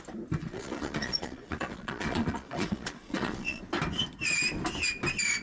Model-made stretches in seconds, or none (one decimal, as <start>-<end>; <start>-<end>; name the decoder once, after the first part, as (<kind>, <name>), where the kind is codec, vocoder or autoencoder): 0.4-3.6 (vocoder, Vocos)